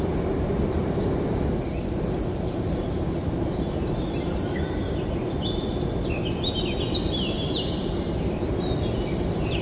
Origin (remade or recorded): recorded